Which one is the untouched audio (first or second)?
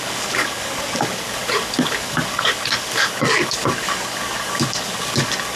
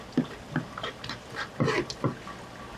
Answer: second